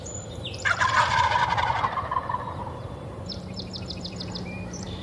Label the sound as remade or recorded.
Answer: remade